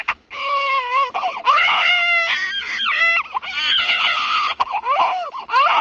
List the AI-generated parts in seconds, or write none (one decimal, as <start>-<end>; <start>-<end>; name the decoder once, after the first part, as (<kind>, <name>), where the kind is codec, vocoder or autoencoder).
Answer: 0.0-1.9 (codec, HILCodec); 2.6-3.0; 3.7-5.8